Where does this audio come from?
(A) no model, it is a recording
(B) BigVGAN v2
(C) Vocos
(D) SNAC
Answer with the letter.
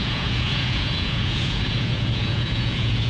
C